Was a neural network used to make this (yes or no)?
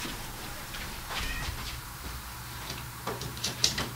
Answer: yes